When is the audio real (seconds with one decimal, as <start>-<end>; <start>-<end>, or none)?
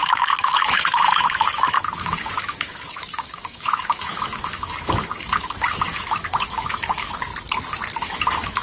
7.3-8.0